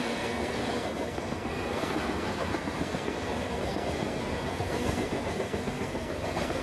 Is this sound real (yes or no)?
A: no